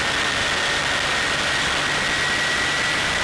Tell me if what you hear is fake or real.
real